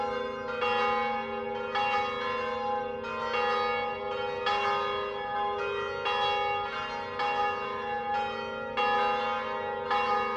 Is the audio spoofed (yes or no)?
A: no